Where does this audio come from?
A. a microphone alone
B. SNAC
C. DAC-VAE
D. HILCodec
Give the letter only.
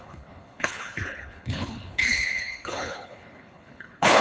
D